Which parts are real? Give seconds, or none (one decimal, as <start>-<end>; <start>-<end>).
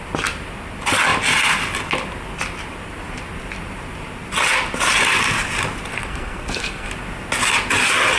0.0-5.9; 6.9-8.2